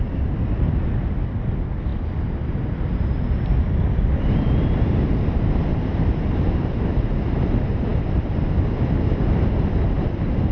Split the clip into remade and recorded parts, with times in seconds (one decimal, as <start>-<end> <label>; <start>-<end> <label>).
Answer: 0.0-10.5 recorded